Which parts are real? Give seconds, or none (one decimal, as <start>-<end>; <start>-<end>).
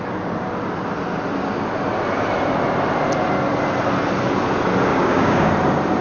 0.0-4.9; 5.5-6.0